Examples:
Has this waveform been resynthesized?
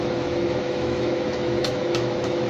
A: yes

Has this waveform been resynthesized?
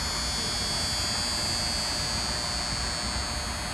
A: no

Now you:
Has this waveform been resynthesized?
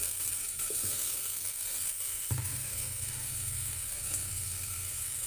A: yes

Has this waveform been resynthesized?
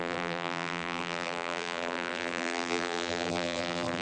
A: yes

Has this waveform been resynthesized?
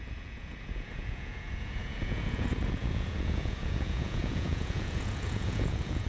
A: yes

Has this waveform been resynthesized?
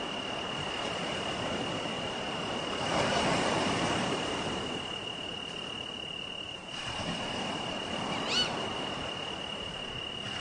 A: no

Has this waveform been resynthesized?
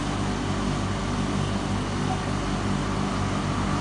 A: no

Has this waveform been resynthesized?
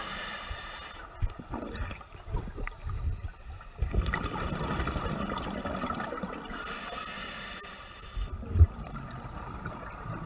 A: no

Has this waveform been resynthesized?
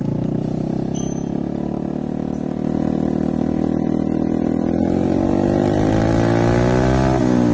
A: no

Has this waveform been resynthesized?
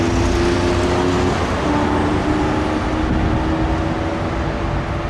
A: no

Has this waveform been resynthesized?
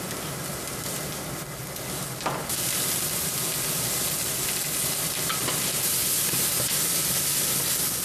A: no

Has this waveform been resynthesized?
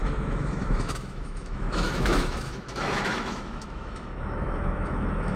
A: yes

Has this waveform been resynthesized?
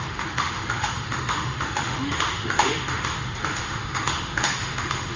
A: yes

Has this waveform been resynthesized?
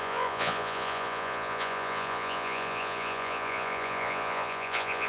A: yes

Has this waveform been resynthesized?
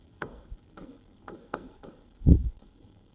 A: yes